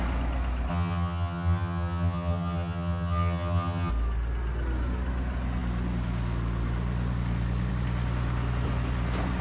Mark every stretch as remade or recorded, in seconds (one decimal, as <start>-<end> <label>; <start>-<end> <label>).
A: 0.0-0.7 recorded; 0.7-3.9 remade; 3.9-9.4 recorded